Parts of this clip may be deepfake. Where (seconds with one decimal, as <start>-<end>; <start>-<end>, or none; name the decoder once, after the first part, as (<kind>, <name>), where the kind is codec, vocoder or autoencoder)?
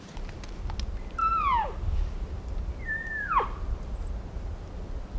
none